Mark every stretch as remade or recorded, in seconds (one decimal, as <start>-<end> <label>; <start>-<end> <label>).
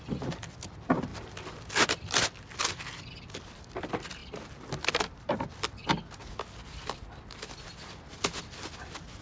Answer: 0.0-5.8 remade; 5.8-7.3 recorded; 7.3-9.2 remade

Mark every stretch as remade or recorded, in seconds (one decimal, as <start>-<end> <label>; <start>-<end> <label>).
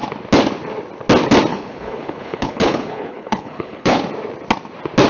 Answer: 0.0-1.5 recorded; 1.5-4.0 remade; 4.0-5.1 recorded